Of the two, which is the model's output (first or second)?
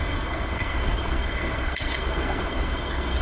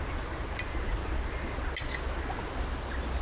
first